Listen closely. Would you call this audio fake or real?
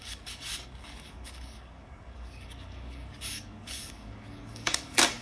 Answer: fake